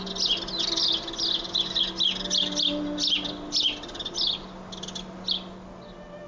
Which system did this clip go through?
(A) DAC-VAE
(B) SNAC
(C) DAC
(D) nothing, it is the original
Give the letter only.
D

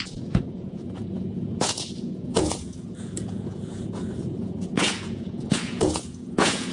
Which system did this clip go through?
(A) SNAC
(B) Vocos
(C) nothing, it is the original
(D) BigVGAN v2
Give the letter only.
B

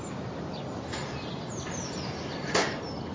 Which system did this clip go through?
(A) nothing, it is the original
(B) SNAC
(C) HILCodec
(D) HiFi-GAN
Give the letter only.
A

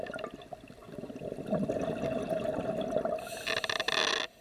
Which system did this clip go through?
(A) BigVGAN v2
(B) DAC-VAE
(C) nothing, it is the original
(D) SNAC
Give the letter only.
C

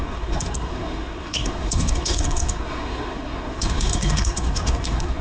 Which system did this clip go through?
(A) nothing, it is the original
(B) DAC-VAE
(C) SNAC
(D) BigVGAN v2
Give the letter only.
C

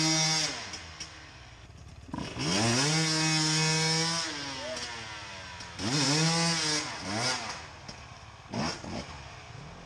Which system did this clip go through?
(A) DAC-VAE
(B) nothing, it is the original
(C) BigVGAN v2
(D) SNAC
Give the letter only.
B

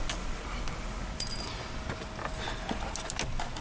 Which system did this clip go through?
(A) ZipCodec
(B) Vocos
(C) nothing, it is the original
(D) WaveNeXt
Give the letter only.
C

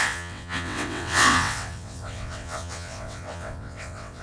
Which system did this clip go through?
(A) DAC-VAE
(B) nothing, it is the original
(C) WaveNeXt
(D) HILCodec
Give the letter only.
C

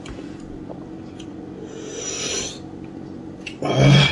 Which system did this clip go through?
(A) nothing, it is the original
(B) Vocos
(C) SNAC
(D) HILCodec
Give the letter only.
A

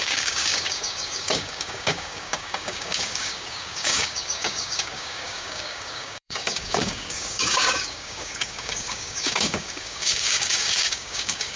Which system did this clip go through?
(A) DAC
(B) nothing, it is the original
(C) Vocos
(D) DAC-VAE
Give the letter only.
A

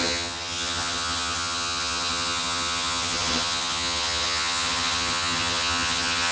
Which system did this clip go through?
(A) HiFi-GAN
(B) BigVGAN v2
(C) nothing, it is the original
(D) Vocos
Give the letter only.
A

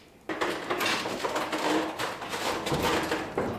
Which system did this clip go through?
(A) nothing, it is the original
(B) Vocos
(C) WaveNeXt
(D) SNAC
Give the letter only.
A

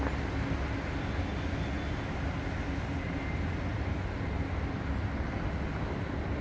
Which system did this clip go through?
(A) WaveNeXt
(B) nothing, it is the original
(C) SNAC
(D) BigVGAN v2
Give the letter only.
B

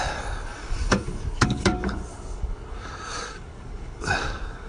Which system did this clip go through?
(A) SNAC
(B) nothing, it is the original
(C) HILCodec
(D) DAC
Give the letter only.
D